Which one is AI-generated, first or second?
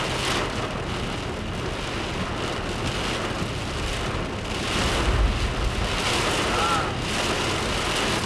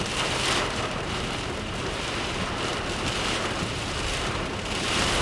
second